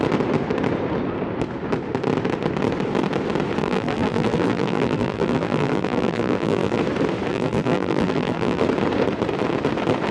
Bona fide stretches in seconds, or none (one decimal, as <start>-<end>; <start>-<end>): 0.0-3.6; 6.8-7.3; 8.6-10.1